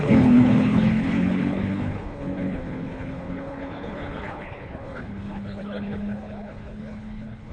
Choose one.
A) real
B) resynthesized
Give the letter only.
B